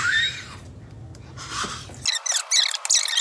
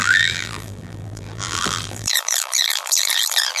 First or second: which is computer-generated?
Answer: second